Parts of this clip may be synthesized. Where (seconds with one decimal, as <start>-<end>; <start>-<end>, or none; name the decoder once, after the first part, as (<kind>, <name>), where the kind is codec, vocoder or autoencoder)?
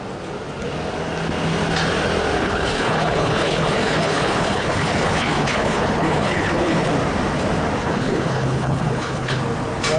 2.4-6.9 (codec, HILCodec); 7.8-9.4